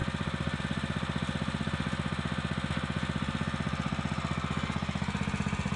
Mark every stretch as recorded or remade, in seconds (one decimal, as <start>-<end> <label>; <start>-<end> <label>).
0.0-5.8 recorded